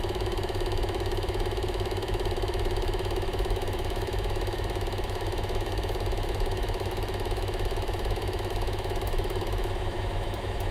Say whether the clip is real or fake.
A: fake